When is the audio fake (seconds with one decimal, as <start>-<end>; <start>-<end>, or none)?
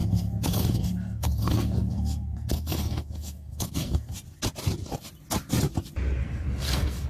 0.0-4.1; 6.2-7.1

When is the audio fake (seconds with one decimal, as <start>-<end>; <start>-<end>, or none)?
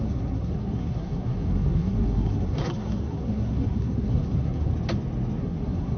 0.0-4.7; 5.4-6.0